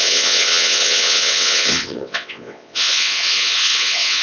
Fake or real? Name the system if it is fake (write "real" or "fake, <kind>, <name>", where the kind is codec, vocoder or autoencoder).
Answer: fake, vocoder, WaveNeXt